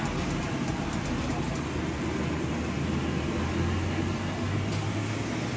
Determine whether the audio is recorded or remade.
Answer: recorded